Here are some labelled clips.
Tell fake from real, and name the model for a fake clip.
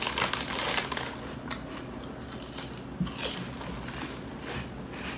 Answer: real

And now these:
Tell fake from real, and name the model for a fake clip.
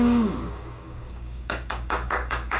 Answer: fake, codec, DAC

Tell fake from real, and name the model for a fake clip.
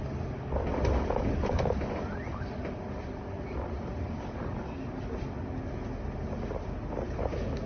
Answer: real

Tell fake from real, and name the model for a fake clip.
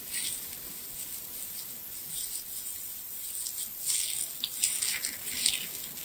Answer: real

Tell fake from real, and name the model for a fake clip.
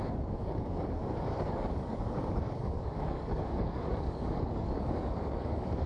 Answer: fake, codec, DAC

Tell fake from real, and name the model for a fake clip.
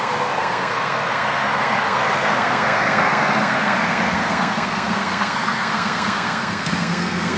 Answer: fake, codec, SNAC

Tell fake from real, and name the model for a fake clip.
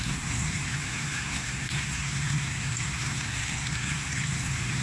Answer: fake, codec, SNAC